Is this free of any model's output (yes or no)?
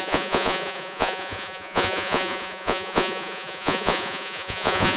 no